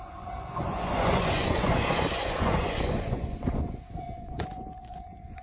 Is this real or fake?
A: fake